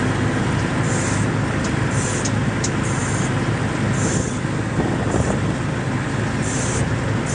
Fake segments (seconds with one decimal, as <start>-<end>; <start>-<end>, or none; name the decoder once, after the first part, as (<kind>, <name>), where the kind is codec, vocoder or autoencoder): none